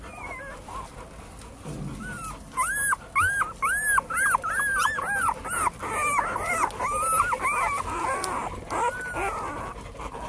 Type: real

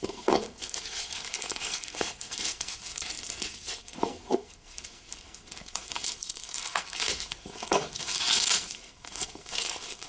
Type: fake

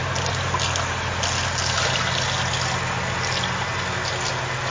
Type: real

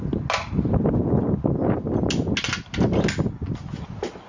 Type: real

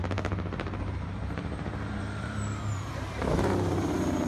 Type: fake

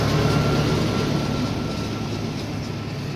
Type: real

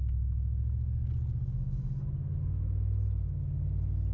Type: real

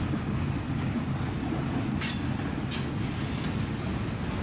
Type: real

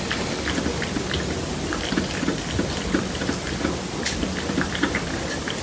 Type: fake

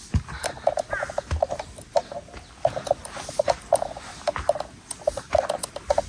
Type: real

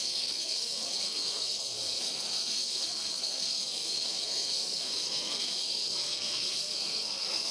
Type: fake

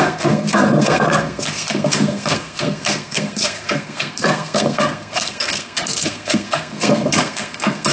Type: fake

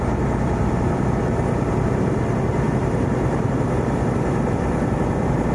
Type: fake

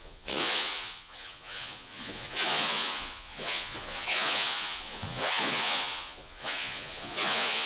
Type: fake